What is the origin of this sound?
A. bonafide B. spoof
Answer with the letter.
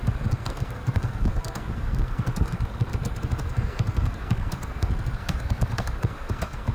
B